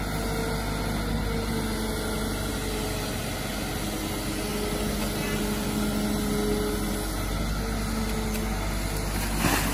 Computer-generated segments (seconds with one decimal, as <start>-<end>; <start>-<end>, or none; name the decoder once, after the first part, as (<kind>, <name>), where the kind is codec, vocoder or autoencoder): none